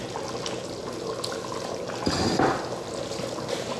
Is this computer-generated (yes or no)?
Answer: no